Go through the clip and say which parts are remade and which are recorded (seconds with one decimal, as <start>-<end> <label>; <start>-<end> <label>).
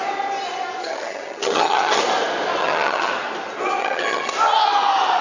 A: 0.0-0.8 recorded; 0.8-2.0 remade; 2.0-2.6 recorded; 2.6-3.1 remade; 3.1-3.8 recorded; 3.8-4.3 remade; 4.3-5.2 recorded